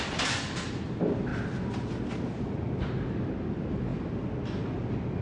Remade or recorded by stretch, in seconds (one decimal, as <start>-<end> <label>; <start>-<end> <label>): 0.0-5.2 recorded